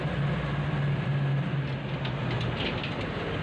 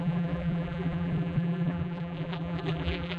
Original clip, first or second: first